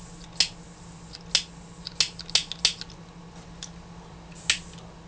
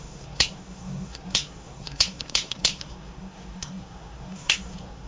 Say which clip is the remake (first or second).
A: second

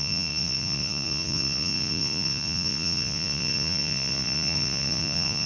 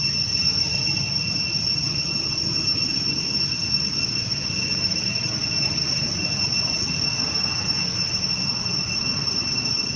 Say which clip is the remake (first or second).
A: first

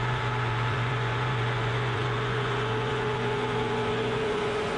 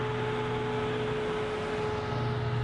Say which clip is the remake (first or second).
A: first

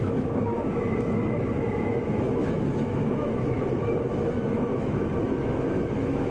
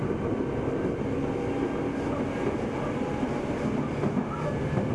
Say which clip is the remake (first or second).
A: first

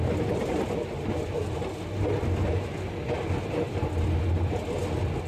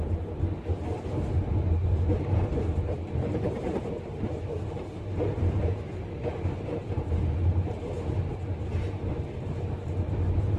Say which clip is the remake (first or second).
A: second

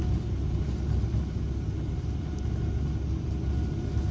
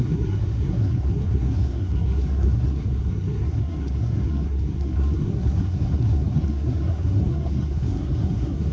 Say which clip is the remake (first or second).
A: second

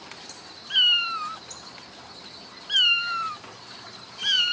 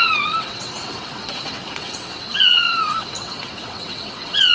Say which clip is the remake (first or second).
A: second